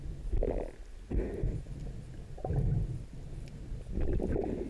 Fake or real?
real